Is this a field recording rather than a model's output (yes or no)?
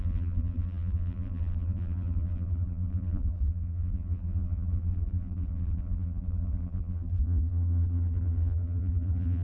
no